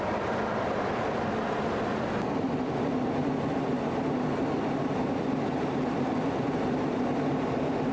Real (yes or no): no